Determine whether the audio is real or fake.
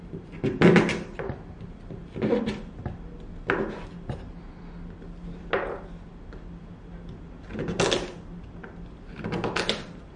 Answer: real